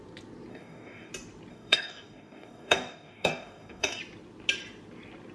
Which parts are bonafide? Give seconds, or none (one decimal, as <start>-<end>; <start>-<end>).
0.0-0.5; 1.1-1.5; 4.0-5.3